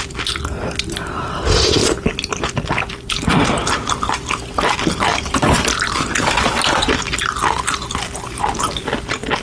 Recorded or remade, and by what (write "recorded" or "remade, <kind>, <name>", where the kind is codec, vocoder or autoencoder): remade, vocoder, BigVGAN v2